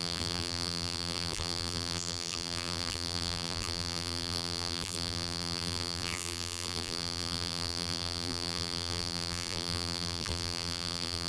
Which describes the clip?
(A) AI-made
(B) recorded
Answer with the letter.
A